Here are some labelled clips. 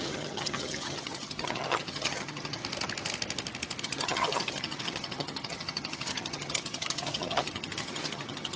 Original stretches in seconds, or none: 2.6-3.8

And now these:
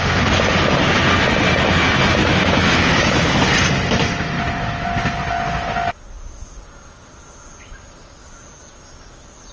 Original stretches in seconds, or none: 0.0-2.2; 3.4-9.5

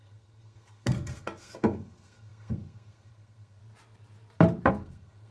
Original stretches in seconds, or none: 3.6-4.7

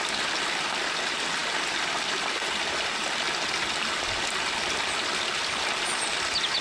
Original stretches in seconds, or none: 0.0-6.6

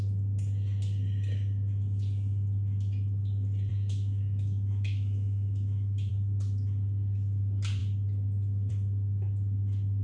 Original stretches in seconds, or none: 0.0-3.7; 6.1-10.0